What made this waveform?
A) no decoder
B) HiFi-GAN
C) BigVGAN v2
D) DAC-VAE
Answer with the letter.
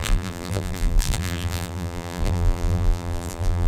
C